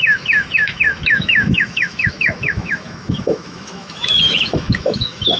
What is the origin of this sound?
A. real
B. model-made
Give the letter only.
B